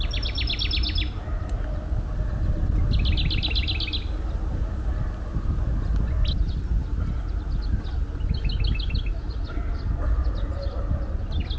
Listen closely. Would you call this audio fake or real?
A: real